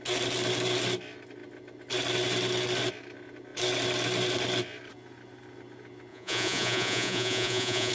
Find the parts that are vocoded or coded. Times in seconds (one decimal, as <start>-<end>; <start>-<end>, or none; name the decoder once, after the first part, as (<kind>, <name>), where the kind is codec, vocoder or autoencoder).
6.1-7.9 (vocoder, Vocos)

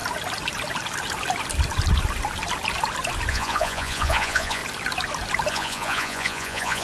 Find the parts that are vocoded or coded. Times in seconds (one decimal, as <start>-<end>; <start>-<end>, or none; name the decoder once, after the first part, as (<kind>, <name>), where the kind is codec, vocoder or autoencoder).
3.3-4.6 (vocoder, Vocos); 5.5-6.8

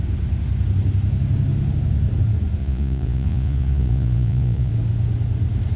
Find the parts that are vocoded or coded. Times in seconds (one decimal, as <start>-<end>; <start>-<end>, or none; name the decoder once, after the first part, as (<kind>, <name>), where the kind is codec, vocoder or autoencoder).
2.6-4.7 (vocoder, Vocos)

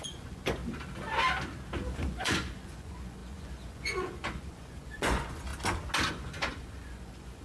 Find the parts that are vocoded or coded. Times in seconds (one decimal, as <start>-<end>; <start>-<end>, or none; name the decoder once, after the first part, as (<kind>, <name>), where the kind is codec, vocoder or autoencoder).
0.0-0.6 (vocoder, Vocos); 2.1-5.5; 6.1-7.4